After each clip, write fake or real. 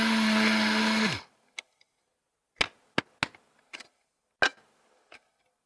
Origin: real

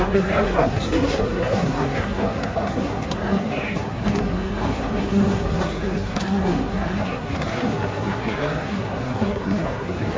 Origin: fake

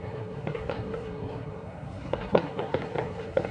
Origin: fake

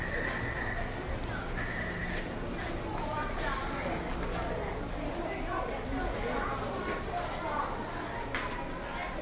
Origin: real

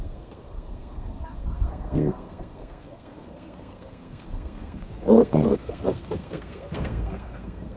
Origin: fake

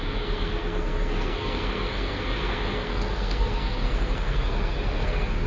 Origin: fake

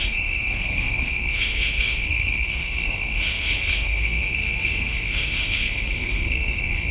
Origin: fake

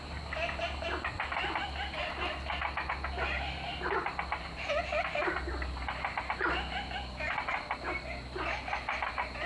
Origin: real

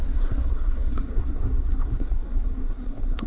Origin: fake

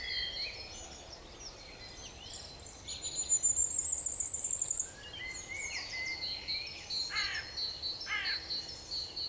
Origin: real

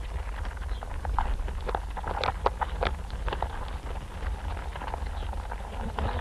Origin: real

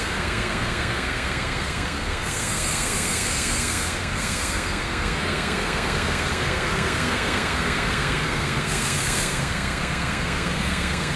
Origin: fake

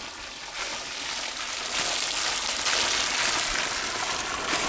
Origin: real